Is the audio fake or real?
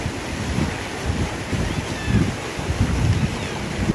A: real